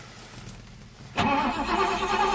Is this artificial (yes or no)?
no